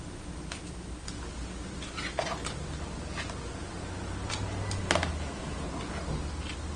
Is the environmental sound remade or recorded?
recorded